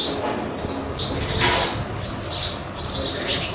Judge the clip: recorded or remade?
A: recorded